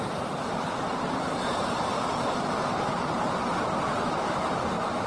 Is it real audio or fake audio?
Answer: fake